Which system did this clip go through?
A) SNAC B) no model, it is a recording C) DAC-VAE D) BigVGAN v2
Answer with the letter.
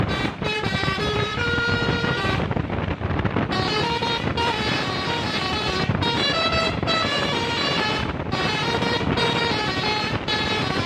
D